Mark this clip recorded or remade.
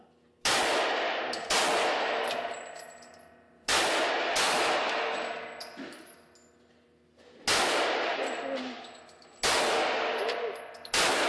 recorded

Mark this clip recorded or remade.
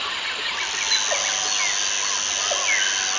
recorded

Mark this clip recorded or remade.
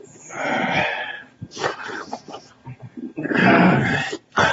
recorded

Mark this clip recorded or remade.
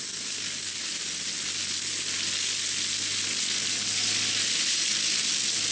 recorded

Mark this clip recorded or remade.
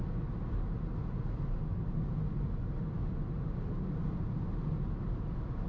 recorded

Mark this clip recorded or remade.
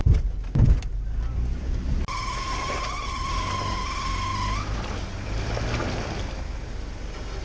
recorded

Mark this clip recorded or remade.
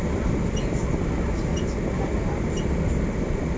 recorded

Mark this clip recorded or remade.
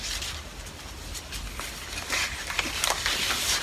recorded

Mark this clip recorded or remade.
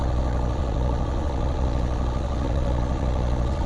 remade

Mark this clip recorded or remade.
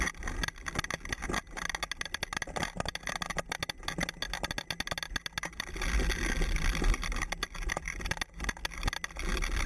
recorded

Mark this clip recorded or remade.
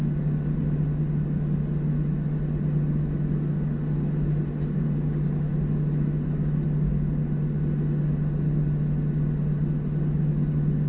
recorded